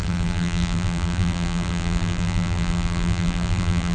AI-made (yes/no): yes